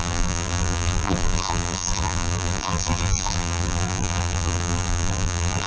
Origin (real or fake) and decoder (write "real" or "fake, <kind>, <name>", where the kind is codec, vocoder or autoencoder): fake, vocoder, BigVGAN v2